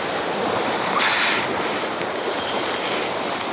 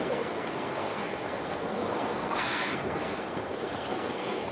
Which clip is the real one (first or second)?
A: first